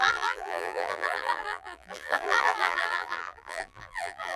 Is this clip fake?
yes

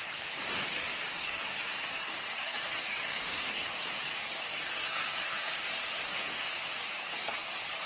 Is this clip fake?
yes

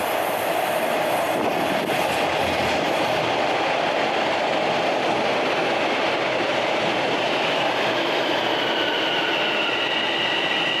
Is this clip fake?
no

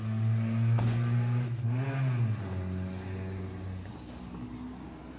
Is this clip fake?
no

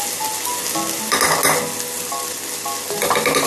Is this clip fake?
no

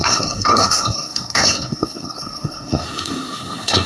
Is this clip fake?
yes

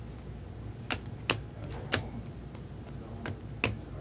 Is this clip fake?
no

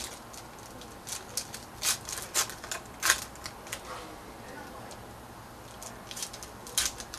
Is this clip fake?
no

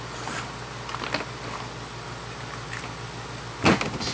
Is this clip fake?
no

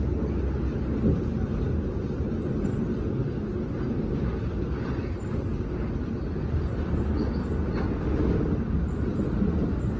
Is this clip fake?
no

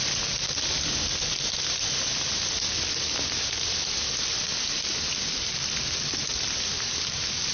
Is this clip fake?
no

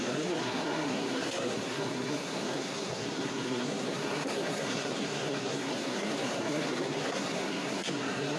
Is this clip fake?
yes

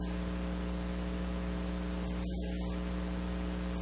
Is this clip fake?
no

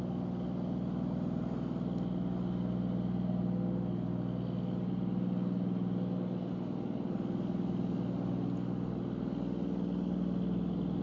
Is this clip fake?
no